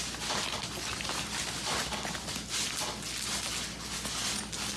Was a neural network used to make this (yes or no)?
no